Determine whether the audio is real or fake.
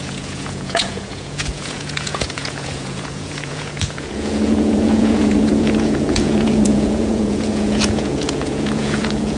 fake